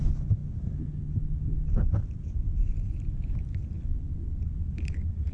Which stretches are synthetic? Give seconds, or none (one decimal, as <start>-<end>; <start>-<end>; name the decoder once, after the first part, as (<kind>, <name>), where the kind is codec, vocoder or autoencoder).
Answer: none